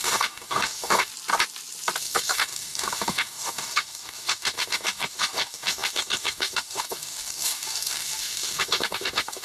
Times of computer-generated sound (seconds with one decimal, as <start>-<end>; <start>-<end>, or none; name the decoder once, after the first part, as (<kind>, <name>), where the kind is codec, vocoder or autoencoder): 0.0-1.1 (codec, DAC); 2.0-9.4